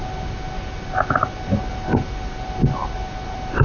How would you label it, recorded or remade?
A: recorded